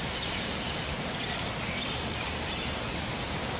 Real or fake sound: real